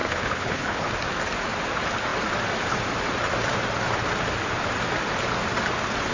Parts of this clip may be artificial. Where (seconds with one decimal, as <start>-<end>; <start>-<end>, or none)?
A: 0.0-0.9